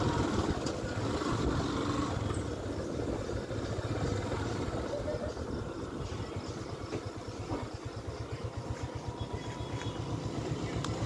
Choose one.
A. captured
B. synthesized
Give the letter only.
A